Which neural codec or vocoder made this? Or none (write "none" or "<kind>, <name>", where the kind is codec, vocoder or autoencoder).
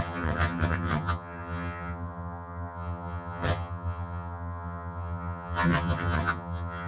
vocoder, HiFi-GAN